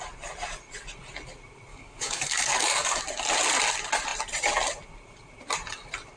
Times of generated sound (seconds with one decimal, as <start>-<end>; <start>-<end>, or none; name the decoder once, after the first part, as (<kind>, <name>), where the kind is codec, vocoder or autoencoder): 1.7-3.0 (codec, DAC)